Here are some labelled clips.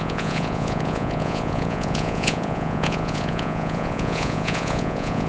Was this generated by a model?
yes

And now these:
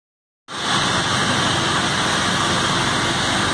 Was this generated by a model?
no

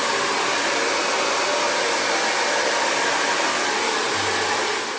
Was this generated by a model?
no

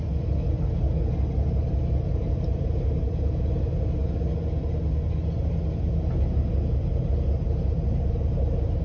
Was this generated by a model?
no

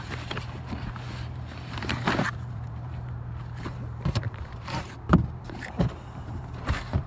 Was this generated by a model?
yes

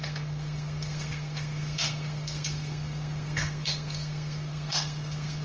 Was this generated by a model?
yes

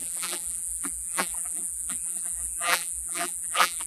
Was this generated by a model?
yes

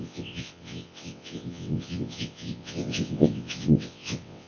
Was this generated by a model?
yes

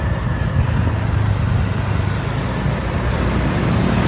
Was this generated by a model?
no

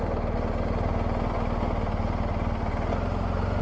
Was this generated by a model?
no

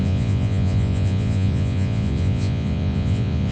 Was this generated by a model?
yes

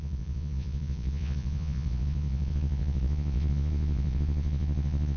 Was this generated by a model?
yes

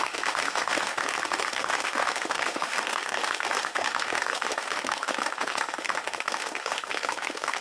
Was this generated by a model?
yes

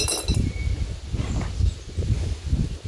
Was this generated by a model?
no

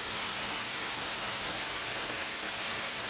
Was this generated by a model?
yes